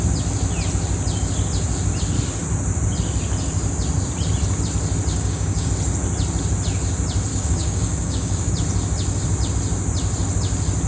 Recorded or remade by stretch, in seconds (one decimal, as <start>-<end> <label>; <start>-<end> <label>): 0.0-5.1 recorded; 5.1-5.7 remade; 5.7-7.3 recorded; 7.3-8.5 remade; 8.5-10.9 recorded